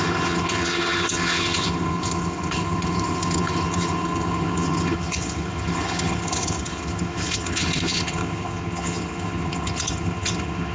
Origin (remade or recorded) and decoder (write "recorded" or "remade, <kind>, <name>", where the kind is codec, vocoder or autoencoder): remade, vocoder, HiFi-GAN